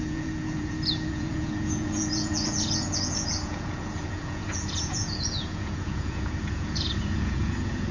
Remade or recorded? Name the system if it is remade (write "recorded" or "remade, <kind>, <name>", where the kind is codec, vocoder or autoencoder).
remade, vocoder, Vocos